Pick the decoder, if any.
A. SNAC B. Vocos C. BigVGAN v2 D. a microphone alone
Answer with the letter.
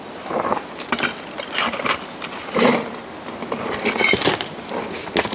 D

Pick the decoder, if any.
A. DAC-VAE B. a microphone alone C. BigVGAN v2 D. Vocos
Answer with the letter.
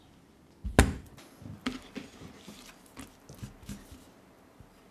B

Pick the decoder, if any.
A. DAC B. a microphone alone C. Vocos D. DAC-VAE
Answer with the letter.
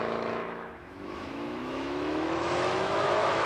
D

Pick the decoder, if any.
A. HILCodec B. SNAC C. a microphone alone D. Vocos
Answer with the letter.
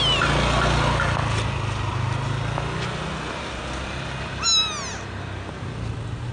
C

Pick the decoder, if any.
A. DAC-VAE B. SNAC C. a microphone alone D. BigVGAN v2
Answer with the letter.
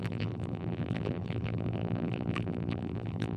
D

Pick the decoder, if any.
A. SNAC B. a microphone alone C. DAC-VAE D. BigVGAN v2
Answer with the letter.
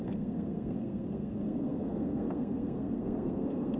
A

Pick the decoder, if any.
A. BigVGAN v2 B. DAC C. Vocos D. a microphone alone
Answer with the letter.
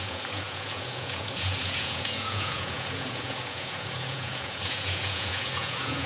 C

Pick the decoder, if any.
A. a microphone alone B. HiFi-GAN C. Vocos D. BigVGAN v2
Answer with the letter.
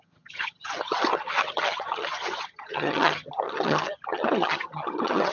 B